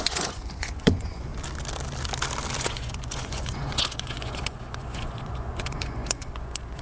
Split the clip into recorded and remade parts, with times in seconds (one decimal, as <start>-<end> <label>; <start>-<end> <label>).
0.0-1.3 remade; 1.3-2.6 recorded; 2.6-6.8 remade